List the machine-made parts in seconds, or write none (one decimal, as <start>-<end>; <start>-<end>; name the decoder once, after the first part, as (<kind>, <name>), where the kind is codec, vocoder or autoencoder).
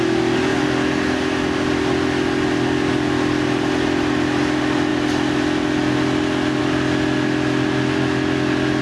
none